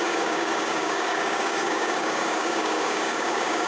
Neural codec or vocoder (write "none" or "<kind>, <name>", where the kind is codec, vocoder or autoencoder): codec, DAC